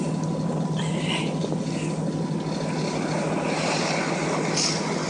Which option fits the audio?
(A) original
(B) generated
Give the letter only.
A